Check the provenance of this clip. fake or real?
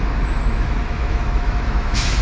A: fake